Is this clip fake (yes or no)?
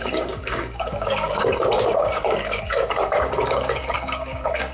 yes